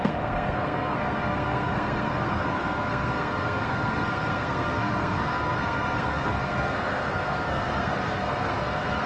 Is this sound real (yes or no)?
no